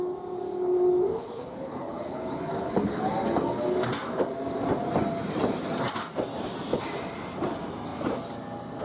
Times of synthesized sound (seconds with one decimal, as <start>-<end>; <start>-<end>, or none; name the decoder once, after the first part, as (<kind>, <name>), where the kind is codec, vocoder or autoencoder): 1.1-3.1 (codec, HILCodec)